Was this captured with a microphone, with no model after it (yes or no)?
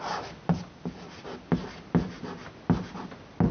yes